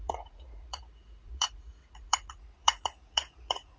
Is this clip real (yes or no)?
no